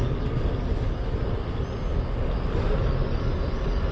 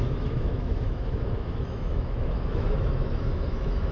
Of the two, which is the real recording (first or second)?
first